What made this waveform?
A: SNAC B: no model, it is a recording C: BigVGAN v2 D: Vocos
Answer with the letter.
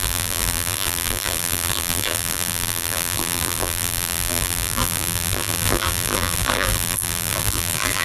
C